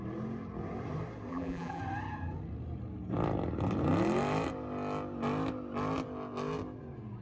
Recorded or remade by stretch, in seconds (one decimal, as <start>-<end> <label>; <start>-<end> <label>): 0.0-1.3 recorded; 1.3-1.8 remade; 1.8-7.2 recorded